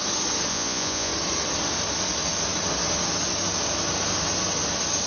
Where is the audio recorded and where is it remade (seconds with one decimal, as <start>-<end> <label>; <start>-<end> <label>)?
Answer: 0.0-0.5 recorded; 0.5-1.1 remade; 1.1-5.1 recorded